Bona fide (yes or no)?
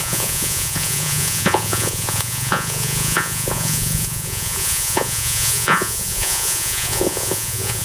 no